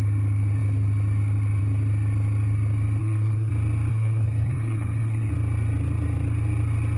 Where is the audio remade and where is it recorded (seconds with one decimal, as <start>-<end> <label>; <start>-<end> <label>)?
0.0-3.0 recorded; 3.0-3.5 remade; 3.5-3.9 recorded; 3.9-5.3 remade; 5.3-7.0 recorded